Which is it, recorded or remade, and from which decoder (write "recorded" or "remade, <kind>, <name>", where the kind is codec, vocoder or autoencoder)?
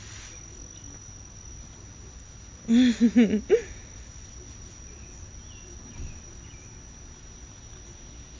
recorded